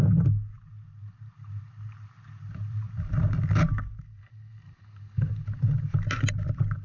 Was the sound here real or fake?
real